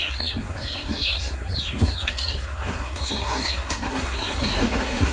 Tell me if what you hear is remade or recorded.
remade